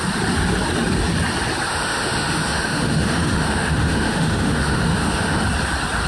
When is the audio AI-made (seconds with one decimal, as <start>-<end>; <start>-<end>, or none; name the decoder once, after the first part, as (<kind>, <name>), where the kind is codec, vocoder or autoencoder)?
1.7-5.4 (autoencoder, DAC-VAE)